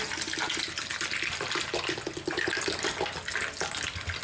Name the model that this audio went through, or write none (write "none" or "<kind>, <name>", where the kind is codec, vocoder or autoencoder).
none